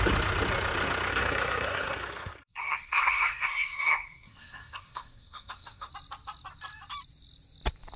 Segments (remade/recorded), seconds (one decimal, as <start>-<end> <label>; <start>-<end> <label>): 0.0-1.1 recorded; 1.1-5.9 remade; 5.9-8.0 recorded